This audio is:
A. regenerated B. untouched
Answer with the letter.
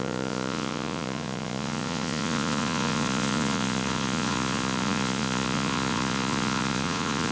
A